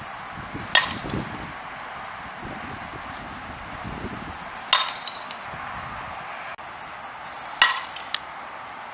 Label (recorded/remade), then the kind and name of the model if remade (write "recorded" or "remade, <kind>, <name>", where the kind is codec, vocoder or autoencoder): recorded